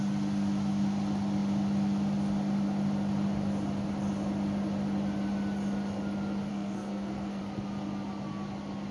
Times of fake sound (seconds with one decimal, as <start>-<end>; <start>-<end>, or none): 6.5-7.4